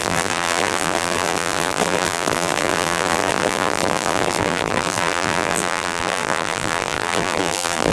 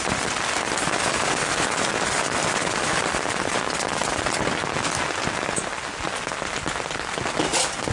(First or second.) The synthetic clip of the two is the first